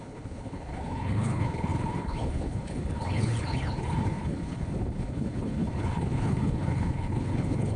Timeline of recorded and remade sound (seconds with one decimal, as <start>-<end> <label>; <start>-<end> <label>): 0.0-7.8 remade